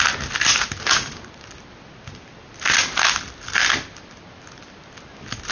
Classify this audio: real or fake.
real